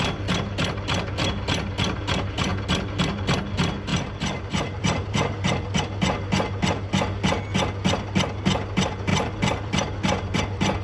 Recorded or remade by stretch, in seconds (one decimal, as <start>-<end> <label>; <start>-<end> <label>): 0.0-3.9 recorded; 3.9-5.8 remade; 5.8-9.1 recorded; 9.1-10.4 remade; 10.4-10.8 recorded